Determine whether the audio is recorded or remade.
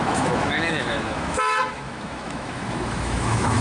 remade